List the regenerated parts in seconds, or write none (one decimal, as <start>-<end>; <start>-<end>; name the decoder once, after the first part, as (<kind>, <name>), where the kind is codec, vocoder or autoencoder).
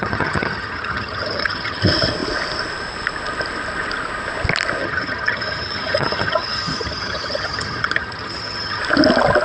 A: 0.0-1.8 (vocoder, HiFi-GAN); 4.8-8.8